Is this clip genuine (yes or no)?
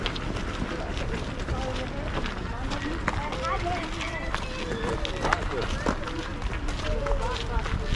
yes